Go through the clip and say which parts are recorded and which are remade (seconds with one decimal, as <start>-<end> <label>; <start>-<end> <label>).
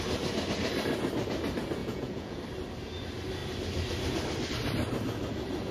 0.0-1.8 recorded; 1.8-2.4 remade; 2.4-5.7 recorded